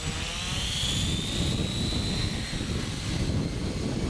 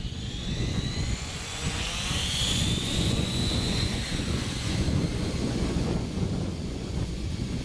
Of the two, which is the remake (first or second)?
second